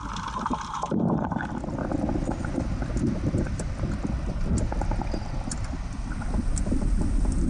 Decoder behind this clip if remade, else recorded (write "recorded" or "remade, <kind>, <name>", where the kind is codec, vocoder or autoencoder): recorded